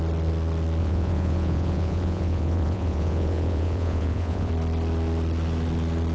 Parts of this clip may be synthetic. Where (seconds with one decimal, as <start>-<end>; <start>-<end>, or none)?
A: 0.8-4.5